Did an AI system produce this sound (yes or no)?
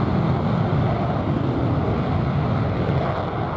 no